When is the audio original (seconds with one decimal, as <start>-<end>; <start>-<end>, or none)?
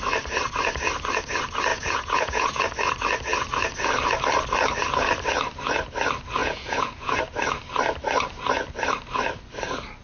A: 0.0-1.7; 2.6-6.4; 7.2-10.0